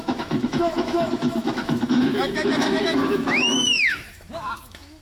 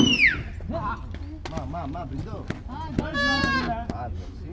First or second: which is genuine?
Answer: second